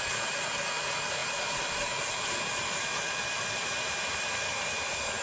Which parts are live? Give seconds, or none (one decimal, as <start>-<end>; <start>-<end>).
0.0-5.2

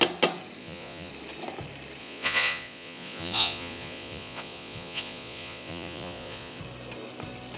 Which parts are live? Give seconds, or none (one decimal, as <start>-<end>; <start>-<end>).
0.0-0.6; 1.1-2.0; 6.6-7.6